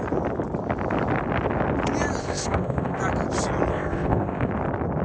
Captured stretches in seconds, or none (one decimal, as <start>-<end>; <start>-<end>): 0.0-2.2; 3.0-3.7; 4.5-5.0